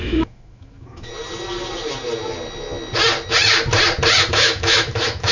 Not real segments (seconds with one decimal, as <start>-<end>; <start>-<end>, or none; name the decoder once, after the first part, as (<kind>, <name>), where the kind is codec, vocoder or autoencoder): 0.0-1.1 (autoencoder, DAC-VAE); 4.3-5.3